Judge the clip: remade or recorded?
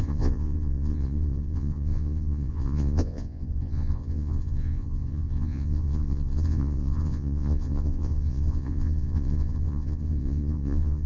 remade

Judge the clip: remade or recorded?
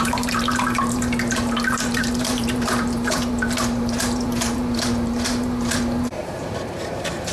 remade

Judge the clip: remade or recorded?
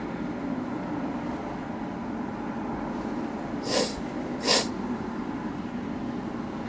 recorded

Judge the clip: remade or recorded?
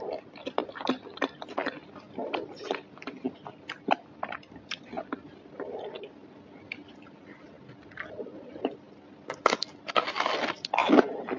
recorded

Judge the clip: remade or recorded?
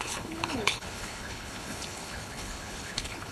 remade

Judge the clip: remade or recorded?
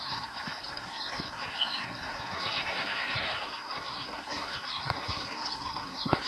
remade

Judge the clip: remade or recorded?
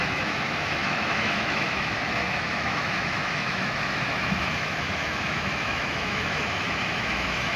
remade